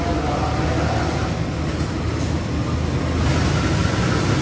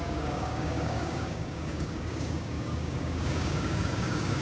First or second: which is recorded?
first